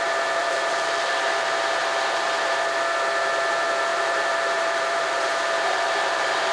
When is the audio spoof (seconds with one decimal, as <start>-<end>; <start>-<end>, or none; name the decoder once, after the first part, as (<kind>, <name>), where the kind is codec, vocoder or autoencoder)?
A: 0.4-1.1 (vocoder, BigVGAN v2); 3.9-6.5